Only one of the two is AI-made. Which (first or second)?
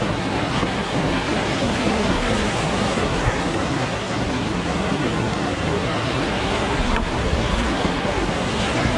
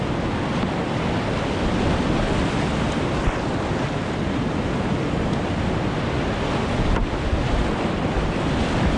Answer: first